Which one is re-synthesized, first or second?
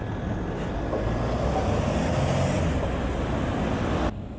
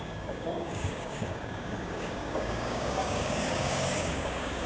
second